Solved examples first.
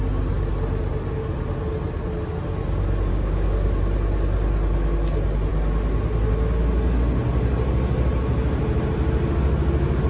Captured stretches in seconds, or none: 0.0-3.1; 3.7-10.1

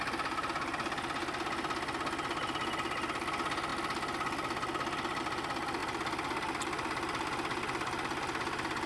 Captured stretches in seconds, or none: 0.0-5.8

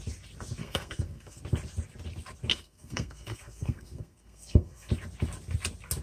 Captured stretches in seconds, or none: 0.0-0.6; 1.4-2.5; 4.9-6.0

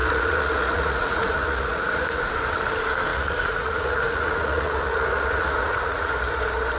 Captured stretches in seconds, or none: 2.3-3.1; 6.1-6.8